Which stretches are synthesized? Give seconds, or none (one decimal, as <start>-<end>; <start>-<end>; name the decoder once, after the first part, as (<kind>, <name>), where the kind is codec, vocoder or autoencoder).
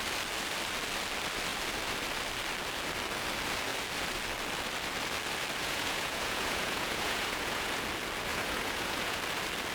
5.6-7.8 (vocoder, Vocos); 8.3-9.2